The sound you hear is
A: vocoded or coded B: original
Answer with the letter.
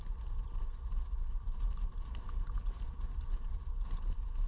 B